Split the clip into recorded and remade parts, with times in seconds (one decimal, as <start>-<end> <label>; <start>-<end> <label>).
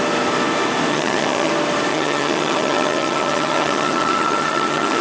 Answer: 0.0-0.9 recorded; 0.9-1.5 remade; 1.5-1.9 recorded; 1.9-5.0 remade